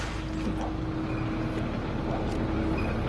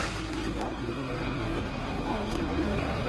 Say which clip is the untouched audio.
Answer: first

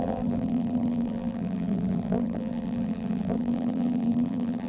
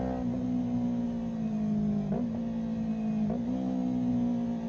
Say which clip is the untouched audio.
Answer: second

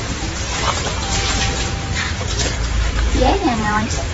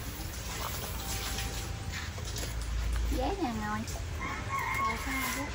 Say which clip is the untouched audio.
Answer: second